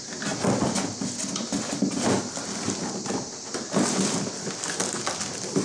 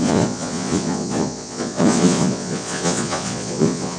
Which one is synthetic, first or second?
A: second